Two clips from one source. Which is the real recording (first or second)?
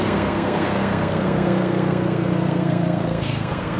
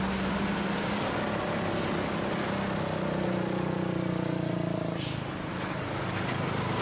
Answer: second